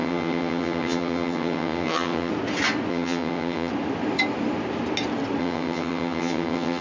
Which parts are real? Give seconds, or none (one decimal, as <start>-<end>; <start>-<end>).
2.3-2.9; 3.7-5.4